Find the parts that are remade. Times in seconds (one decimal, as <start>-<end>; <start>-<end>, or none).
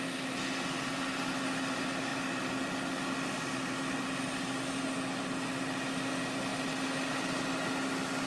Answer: none